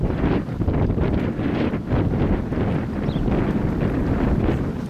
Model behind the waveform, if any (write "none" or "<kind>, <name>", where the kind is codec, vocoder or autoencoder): none